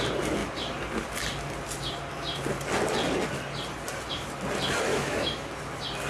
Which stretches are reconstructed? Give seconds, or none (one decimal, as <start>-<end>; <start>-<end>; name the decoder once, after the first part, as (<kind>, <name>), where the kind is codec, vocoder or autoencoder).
4.9-5.5 (autoencoder, DAC-VAE)